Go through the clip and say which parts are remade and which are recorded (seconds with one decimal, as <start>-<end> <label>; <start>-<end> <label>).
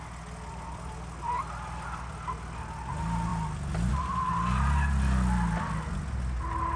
0.0-6.8 recorded